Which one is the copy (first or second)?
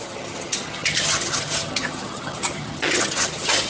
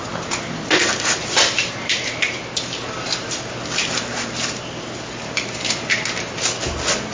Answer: first